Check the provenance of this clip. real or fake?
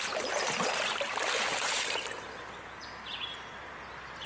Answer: real